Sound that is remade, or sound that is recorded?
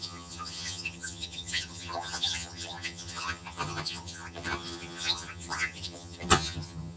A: remade